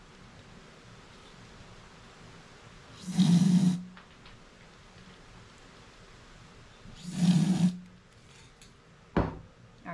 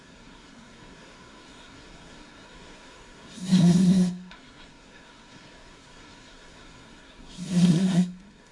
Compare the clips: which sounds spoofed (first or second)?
second